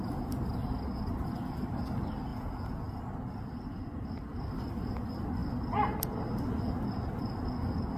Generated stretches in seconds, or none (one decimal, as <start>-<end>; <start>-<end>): 2.3-3.0